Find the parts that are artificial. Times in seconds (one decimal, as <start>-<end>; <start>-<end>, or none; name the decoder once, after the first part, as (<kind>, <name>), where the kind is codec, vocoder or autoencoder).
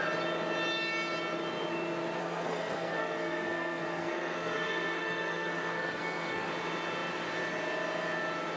2.2-6.5 (codec, SNAC)